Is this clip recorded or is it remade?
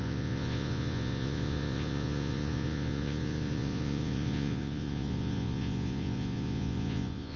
remade